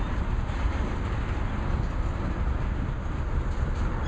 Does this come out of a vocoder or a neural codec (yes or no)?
no